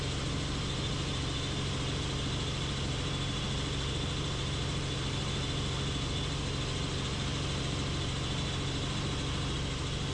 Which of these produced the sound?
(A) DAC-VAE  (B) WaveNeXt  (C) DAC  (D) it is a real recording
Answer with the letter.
D